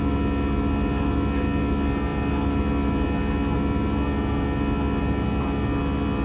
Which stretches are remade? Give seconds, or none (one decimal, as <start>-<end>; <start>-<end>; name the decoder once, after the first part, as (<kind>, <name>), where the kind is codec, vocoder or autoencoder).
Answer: none